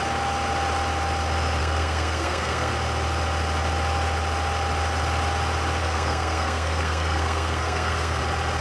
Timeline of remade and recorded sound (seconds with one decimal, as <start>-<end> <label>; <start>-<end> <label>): 0.0-1.6 recorded; 1.6-2.7 remade; 2.7-5.8 recorded; 5.8-8.2 remade; 8.2-8.6 recorded